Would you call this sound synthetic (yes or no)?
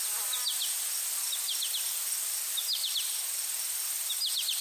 no